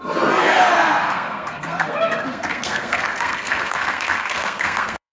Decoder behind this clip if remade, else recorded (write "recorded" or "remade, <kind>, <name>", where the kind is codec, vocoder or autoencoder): remade, codec, SNAC